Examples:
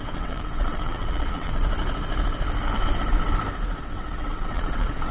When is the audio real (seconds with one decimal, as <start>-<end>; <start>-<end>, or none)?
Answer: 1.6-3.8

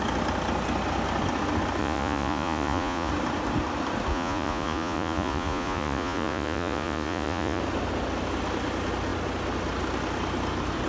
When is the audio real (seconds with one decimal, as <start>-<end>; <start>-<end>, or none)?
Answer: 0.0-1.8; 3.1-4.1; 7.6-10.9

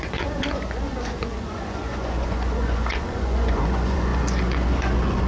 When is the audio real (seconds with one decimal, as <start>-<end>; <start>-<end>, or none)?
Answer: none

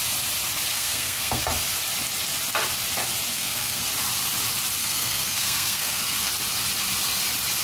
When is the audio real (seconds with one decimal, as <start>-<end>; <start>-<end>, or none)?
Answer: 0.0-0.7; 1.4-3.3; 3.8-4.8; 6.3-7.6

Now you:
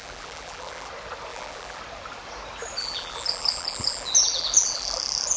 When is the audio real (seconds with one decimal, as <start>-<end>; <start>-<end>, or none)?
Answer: 0.9-1.3; 1.8-2.8

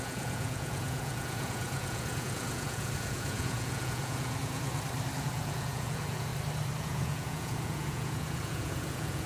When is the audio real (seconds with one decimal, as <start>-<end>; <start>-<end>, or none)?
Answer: 4.7-5.2; 6.3-6.8

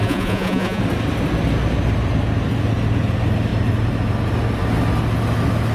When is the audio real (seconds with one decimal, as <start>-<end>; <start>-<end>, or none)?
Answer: 0.8-5.7